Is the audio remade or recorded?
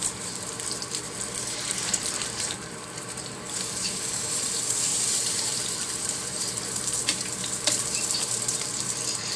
remade